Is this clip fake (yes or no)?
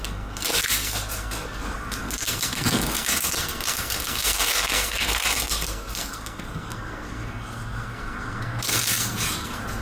yes